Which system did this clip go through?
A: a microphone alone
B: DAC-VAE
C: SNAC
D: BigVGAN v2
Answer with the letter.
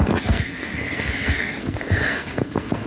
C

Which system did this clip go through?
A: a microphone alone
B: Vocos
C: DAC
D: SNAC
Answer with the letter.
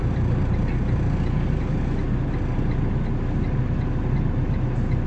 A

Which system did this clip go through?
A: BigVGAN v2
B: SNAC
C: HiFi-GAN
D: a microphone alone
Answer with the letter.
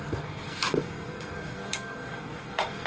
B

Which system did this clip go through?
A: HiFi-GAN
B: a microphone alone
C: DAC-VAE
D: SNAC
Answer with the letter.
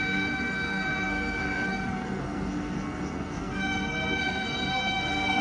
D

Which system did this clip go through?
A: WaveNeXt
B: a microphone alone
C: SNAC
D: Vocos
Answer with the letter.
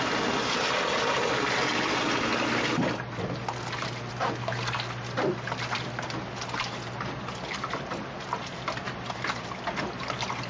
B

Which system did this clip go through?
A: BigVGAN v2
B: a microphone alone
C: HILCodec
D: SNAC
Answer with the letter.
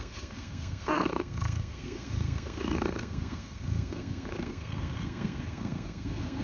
D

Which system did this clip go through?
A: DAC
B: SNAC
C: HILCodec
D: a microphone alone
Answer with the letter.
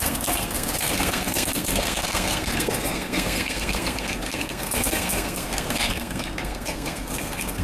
B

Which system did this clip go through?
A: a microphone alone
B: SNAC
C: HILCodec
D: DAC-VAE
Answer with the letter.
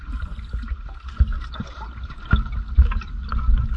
A